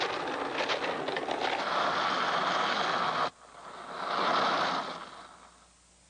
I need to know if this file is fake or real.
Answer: real